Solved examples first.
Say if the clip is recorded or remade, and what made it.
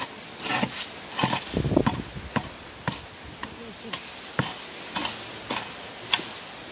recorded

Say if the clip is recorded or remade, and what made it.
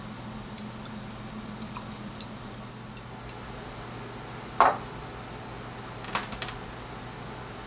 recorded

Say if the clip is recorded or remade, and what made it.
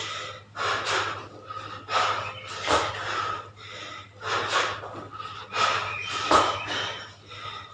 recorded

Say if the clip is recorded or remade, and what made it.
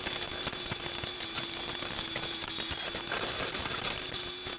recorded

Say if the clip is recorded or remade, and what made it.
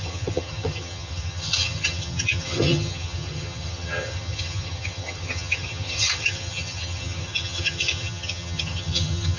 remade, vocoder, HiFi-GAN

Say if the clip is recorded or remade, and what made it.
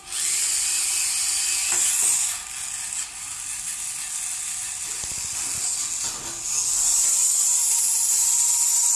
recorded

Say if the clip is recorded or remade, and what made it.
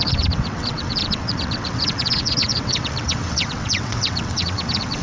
remade, vocoder, WaveNeXt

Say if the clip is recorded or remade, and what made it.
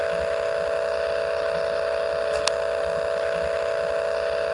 recorded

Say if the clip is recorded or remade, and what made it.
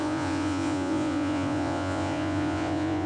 remade, vocoder, Vocos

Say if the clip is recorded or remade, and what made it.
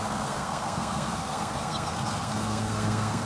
remade, codec, SNAC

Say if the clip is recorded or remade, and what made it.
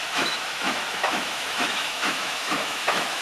remade, autoencoder, DAC-VAE